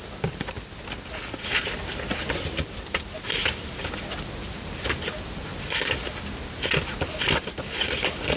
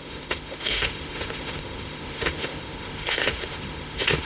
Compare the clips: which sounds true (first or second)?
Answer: first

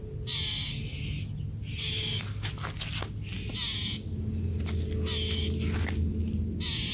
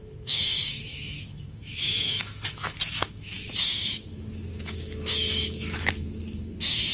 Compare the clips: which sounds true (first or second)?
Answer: first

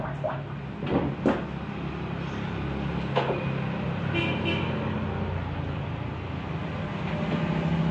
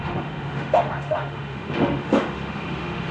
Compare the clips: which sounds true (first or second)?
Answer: first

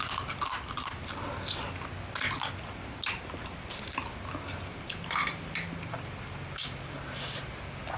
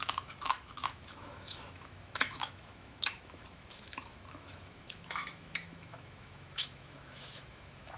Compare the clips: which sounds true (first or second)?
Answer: first